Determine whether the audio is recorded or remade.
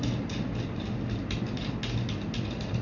recorded